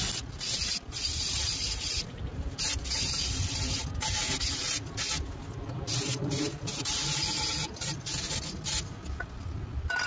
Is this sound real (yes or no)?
yes